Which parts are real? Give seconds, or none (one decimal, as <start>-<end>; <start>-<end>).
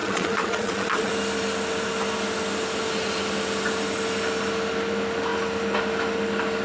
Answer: 1.1-6.6